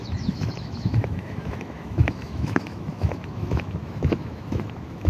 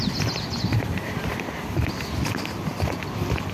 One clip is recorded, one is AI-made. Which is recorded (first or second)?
second